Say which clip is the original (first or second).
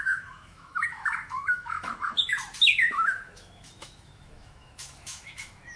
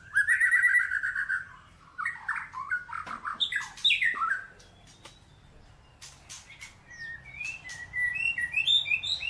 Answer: second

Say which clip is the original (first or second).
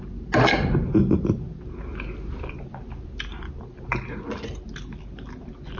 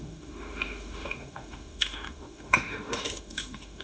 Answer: first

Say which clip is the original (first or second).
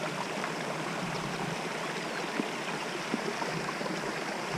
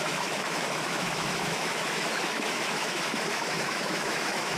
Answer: first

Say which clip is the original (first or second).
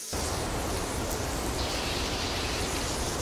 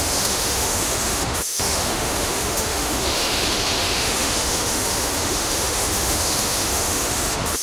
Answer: first